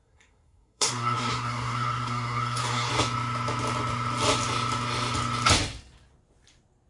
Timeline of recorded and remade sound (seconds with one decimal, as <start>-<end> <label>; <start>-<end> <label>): 0.0-2.9 remade; 2.9-6.9 recorded